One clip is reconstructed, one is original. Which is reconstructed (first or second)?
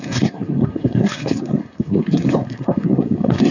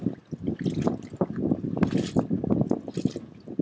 first